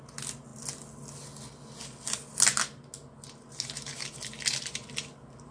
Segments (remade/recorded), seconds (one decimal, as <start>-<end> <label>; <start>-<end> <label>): 0.0-5.5 recorded

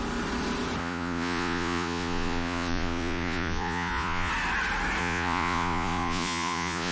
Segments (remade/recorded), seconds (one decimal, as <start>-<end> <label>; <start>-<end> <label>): 0.0-0.8 recorded; 0.8-4.3 remade; 4.3-5.0 recorded; 5.0-6.9 remade

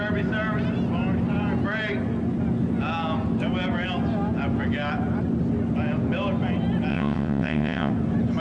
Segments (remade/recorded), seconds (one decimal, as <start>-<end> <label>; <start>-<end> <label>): 0.0-6.9 recorded; 6.9-7.9 remade; 7.9-8.4 recorded

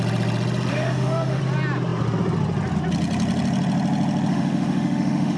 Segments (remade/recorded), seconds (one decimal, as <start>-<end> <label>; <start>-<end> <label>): 0.0-0.7 recorded; 0.7-1.4 remade; 1.4-4.3 recorded; 4.3-5.4 remade

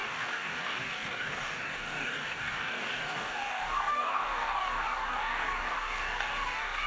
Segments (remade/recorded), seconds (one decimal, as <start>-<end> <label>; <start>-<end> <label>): 0.0-6.9 remade

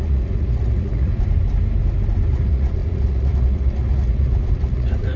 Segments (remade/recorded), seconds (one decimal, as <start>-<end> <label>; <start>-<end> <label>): 0.0-1.1 remade; 1.1-2.3 recorded; 2.3-5.2 remade

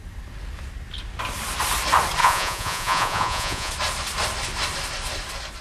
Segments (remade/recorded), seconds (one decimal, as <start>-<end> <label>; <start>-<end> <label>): 0.0-2.2 recorded; 2.2-3.7 remade; 3.7-5.6 recorded

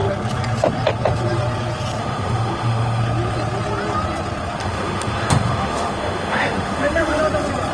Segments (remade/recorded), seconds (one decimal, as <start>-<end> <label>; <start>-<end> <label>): 0.0-2.0 recorded; 2.0-3.0 remade; 3.0-4.6 recorded; 4.6-7.2 remade; 7.2-7.7 recorded